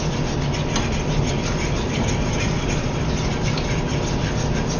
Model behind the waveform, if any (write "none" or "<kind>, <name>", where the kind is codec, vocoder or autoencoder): none